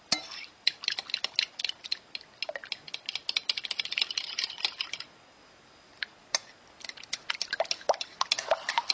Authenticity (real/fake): real